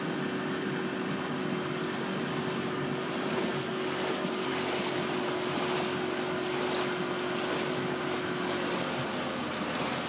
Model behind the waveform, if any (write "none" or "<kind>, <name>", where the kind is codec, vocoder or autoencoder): none